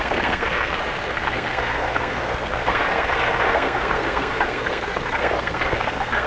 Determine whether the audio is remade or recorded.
remade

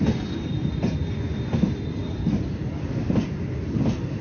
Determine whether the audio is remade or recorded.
recorded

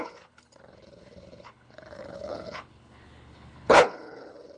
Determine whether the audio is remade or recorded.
remade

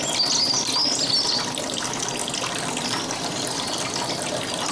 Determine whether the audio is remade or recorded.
recorded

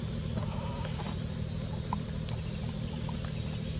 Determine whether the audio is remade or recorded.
recorded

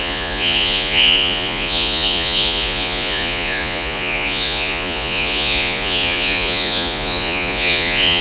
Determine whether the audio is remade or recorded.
remade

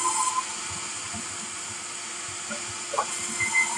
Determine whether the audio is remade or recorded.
recorded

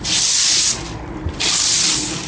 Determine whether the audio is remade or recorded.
recorded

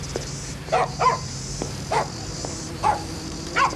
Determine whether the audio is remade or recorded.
remade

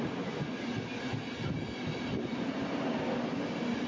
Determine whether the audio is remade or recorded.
recorded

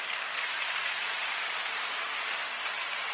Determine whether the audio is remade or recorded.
remade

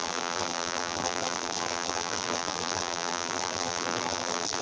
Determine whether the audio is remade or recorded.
remade